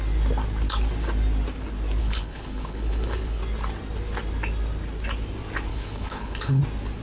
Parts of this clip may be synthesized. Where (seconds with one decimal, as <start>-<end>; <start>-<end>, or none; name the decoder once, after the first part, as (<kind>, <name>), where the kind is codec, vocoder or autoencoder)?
2.0-3.4 (codec, HILCodec); 5.7-6.6